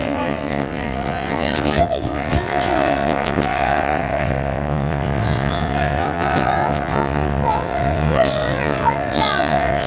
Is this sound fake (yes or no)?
yes